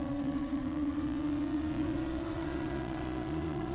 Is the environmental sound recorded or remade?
remade